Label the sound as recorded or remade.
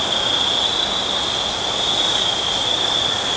recorded